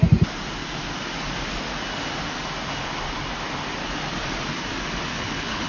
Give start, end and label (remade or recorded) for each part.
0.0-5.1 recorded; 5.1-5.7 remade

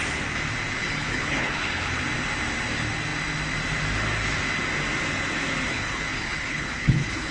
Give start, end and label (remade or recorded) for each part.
0.0-0.8 recorded; 0.8-2.0 remade; 2.0-5.7 recorded; 5.7-7.3 remade

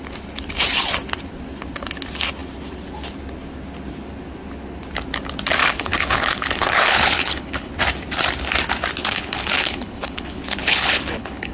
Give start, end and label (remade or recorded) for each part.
0.0-5.6 recorded; 5.6-7.7 remade; 7.7-9.0 recorded; 9.0-11.5 remade

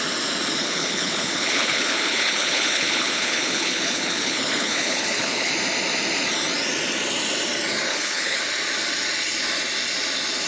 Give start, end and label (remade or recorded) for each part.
0.0-0.6 recorded; 0.6-5.5 remade; 5.5-7.9 recorded; 7.9-8.4 remade; 8.4-10.5 recorded